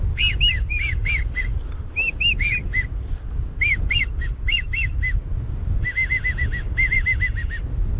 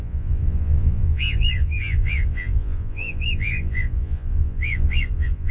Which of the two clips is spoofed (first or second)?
second